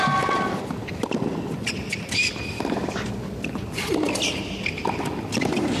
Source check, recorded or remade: remade